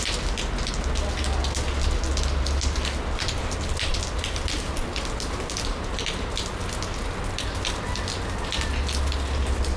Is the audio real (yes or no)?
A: yes